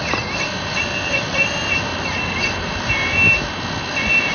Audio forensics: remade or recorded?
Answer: recorded